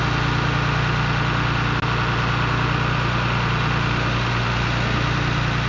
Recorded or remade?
recorded